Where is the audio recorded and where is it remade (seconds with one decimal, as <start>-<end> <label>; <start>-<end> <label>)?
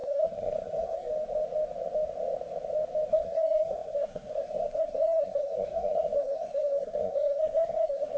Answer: 0.0-1.1 remade; 1.1-3.1 recorded; 3.1-8.2 remade